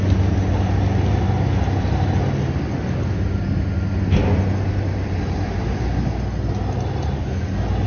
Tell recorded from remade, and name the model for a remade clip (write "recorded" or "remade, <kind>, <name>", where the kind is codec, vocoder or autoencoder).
recorded